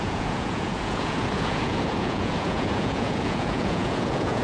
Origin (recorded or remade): remade